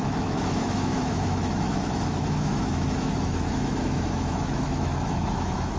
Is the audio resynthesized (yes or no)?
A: yes